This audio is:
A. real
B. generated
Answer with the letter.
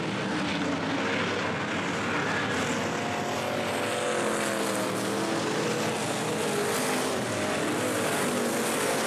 A